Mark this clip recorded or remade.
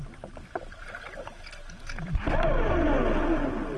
recorded